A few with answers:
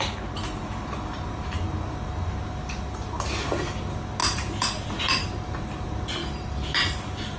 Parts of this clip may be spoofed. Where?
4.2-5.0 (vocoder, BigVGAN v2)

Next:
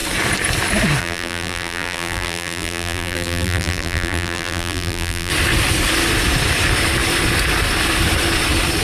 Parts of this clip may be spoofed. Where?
1.0-5.3 (vocoder, BigVGAN v2)

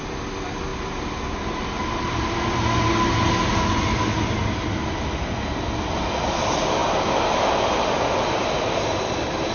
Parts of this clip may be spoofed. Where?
none

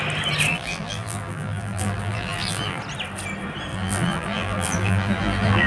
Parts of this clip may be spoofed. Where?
0.5-2.8 (vocoder, BigVGAN v2); 3.7-5.7

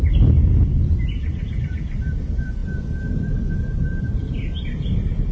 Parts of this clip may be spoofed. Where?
0.0-0.4 (vocoder, BigVGAN v2); 1.6-5.3

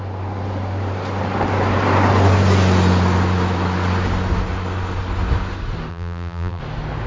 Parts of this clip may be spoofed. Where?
5.9-6.6 (vocoder, BigVGAN v2)

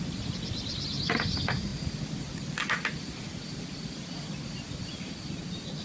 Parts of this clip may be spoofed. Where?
none